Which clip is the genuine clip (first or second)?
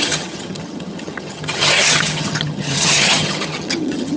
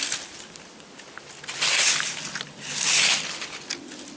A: second